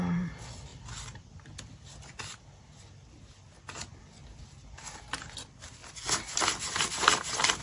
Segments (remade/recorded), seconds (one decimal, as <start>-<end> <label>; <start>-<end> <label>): 0.0-0.7 recorded; 0.7-1.9 remade; 1.9-3.8 recorded; 3.8-4.4 remade; 4.4-7.6 recorded